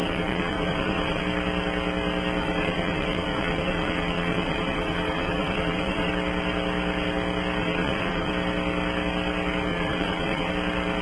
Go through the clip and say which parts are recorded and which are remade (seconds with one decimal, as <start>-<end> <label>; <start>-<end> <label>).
0.0-1.2 remade; 1.2-2.4 recorded; 2.4-6.1 remade; 6.1-7.6 recorded; 7.6-8.3 remade; 8.3-9.7 recorded; 9.7-10.5 remade; 10.5-11.0 recorded